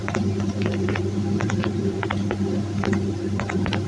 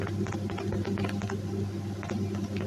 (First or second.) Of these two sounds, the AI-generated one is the first